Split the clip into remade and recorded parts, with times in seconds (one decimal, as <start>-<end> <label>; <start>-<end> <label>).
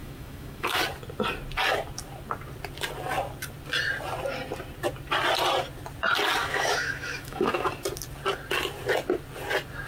0.0-0.8 remade; 0.8-6.4 recorded; 6.4-7.7 remade; 7.7-9.9 recorded